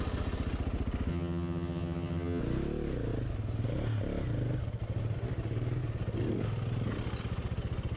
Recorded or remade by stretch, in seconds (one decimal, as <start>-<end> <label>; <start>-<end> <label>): 0.0-1.1 recorded; 1.1-2.4 remade; 2.4-8.0 recorded